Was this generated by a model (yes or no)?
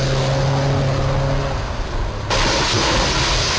no